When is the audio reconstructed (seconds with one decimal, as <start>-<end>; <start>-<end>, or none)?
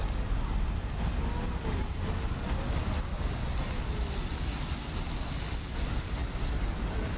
none